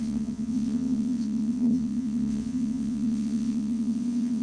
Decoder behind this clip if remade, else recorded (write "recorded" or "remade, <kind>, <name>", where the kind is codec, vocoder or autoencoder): remade, vocoder, WaveNeXt